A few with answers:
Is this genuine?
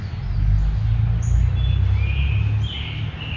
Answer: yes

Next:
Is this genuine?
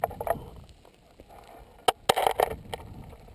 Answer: yes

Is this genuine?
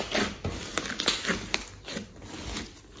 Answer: yes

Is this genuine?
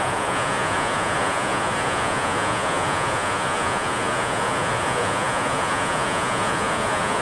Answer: no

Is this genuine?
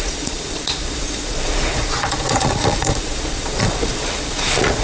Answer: no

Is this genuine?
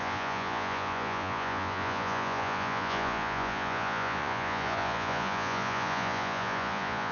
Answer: no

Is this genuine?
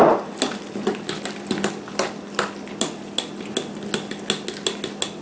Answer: yes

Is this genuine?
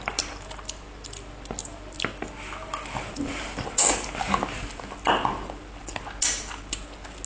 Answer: yes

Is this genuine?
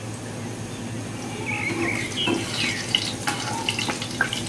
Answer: yes